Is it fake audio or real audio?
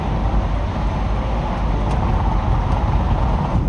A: real